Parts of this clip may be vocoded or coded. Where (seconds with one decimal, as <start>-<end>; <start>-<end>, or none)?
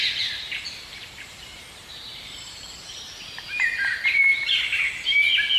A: 0.4-3.7